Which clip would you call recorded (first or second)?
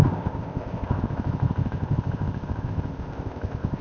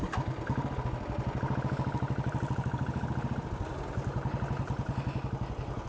second